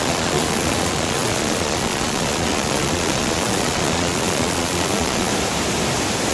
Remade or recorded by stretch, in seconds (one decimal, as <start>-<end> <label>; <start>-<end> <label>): 0.0-5.3 remade; 5.3-6.3 recorded